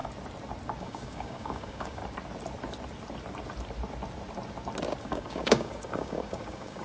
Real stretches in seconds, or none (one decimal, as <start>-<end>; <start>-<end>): 0.0-0.8; 2.0-5.0

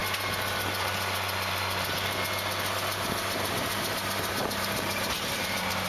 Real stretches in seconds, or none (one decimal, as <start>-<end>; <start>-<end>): 0.0-3.5

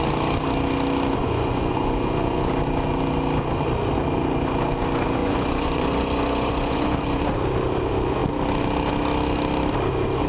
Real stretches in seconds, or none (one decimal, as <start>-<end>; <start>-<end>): 0.0-1.2; 2.5-5.2; 7.2-10.3

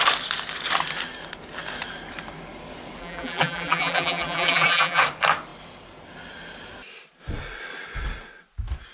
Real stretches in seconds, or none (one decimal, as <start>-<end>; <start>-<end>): 0.0-3.0; 5.0-8.9

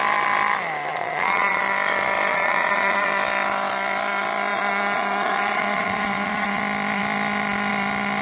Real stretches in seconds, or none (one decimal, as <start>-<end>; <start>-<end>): 0.0-0.9; 1.6-2.3; 3.1-4.5; 6.6-8.2